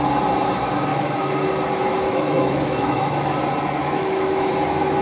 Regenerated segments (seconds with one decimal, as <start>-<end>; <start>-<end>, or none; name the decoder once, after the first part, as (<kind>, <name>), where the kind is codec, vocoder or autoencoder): 0.9-1.5 (autoencoder, DAC-VAE); 1.9-3.3; 3.8-4.5

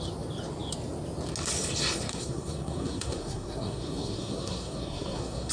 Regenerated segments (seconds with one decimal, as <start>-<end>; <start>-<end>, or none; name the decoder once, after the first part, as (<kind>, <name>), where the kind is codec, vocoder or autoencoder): 2.1-5.5 (codec, SNAC)

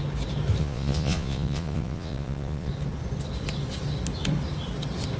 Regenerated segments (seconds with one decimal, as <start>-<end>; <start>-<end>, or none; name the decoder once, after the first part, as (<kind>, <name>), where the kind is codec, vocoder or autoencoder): 0.6-2.7 (vocoder, Vocos)

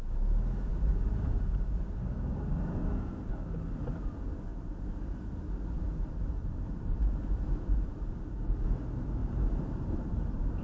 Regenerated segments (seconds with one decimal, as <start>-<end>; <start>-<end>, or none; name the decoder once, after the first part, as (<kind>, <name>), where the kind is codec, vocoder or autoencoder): 0.7-3.3 (vocoder, BigVGAN v2); 4.5-8.1; 9.2-10.6

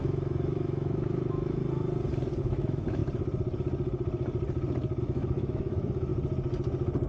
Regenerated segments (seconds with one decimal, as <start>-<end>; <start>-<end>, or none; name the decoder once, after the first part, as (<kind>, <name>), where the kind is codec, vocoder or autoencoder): 0.0-1.6 (autoencoder, DAC-VAE); 2.4-3.0; 5.0-6.1

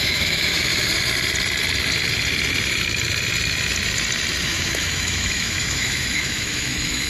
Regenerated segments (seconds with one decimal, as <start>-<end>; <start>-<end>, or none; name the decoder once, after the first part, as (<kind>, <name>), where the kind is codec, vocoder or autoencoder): 0.0-0.7 (autoencoder, DAC-VAE); 4.4-7.1

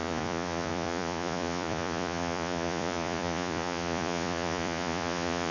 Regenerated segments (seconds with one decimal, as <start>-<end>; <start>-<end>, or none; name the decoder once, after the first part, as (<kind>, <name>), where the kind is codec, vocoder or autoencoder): 0.0-5.5 (vocoder, Vocos)